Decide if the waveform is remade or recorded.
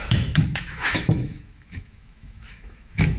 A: remade